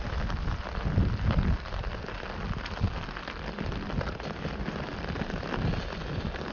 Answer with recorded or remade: recorded